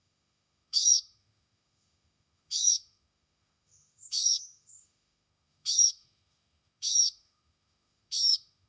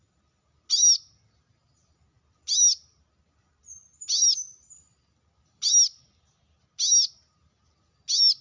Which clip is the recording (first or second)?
second